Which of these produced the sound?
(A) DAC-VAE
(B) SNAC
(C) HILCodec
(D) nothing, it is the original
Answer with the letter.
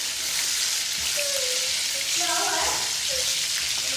D